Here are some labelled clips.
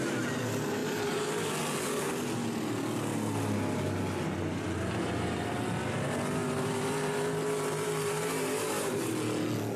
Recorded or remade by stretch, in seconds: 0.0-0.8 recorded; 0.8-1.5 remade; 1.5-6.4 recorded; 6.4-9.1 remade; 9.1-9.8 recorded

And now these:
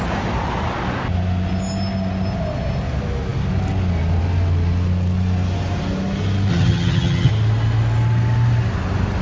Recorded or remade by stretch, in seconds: 0.0-6.5 recorded; 6.5-7.3 remade; 7.3-9.2 recorded

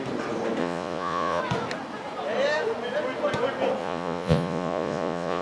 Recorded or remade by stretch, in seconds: 0.0-0.6 recorded; 0.6-1.4 remade; 1.4-3.8 recorded; 3.8-5.4 remade

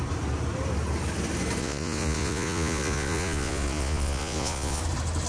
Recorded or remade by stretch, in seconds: 0.0-1.6 recorded; 1.6-4.8 remade; 4.8-5.3 recorded

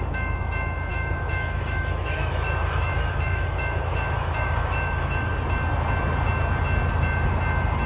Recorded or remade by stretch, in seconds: 0.0-5.3 remade; 5.3-7.9 recorded